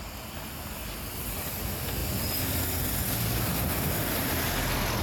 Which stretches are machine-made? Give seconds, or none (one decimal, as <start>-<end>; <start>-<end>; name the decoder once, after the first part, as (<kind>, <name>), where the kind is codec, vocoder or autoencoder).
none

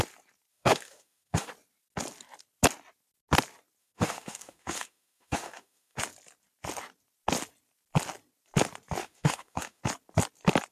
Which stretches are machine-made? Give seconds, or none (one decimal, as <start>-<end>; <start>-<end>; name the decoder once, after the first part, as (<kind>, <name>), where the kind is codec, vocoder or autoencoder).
0.5-1.5 (autoencoder, DAC-VAE); 3.8-6.0; 9.0-9.8

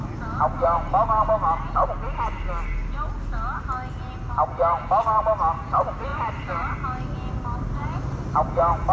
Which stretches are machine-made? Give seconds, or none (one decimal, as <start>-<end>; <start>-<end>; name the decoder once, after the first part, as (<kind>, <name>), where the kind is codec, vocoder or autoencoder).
none